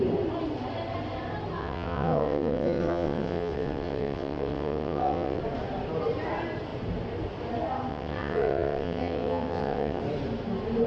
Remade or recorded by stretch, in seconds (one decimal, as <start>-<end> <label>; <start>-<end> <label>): 0.0-1.6 recorded; 1.6-5.4 remade; 5.4-7.9 recorded; 7.9-10.0 remade; 10.0-10.9 recorded